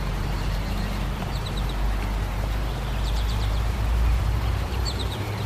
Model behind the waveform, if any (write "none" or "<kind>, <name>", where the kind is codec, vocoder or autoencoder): vocoder, BigVGAN v2